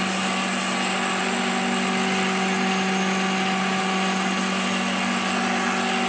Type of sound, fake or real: real